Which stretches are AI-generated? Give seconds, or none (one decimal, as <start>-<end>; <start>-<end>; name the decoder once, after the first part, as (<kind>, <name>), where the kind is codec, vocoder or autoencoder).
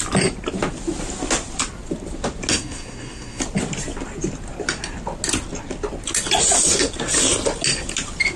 2.5-3.4 (codec, SNAC)